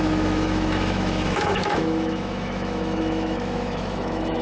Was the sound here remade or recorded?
remade